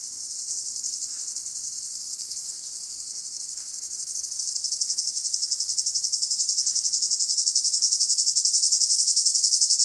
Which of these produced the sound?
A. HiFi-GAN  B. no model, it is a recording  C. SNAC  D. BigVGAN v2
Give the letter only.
C